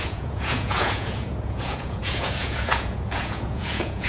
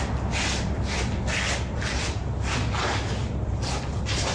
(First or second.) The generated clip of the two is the first